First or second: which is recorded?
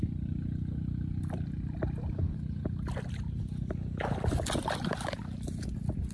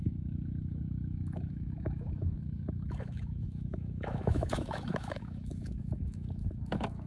first